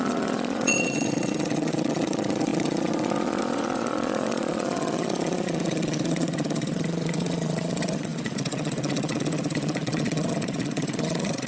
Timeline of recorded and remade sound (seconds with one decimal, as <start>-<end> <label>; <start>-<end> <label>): 0.0-11.5 remade